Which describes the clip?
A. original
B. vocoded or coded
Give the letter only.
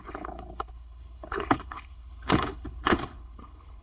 B